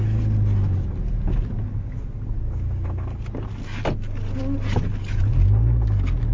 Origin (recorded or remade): recorded